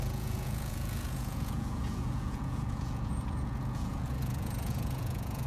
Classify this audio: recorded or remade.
remade